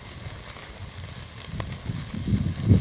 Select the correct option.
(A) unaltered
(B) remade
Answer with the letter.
A